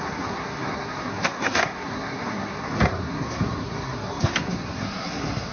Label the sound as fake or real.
fake